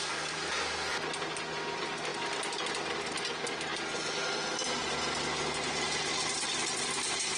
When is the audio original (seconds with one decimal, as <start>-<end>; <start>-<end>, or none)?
0.0-7.4